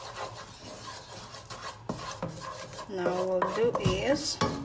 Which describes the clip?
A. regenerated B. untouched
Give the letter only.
B